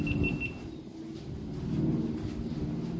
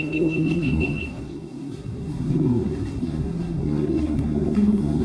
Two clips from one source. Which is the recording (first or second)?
first